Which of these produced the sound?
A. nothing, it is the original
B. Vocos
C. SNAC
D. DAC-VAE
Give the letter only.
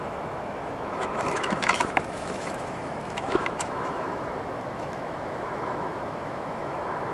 D